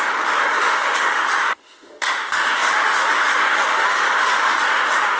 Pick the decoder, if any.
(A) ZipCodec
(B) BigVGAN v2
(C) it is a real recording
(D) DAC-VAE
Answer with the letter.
D